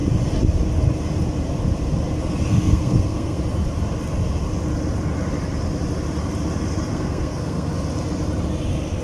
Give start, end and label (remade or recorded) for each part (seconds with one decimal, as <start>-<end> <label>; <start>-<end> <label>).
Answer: 0.0-2.5 recorded; 2.5-3.4 remade; 3.4-6.9 recorded; 6.9-7.7 remade; 7.7-9.0 recorded